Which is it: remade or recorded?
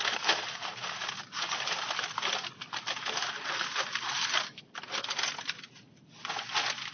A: recorded